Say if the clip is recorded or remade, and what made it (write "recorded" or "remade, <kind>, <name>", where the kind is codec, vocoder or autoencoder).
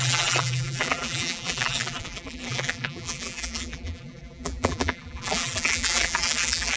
remade, vocoder, BigVGAN v2